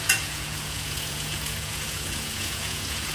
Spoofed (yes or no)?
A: yes